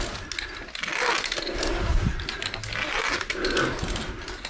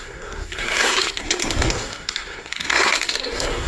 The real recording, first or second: first